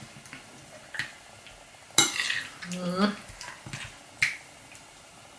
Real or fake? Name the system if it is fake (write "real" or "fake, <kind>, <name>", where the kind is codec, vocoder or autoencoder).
real